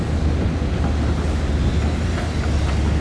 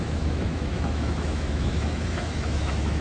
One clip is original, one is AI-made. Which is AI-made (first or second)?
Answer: second